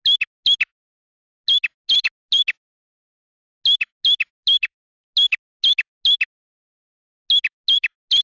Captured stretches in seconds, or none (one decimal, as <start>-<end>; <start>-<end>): 0.0-8.2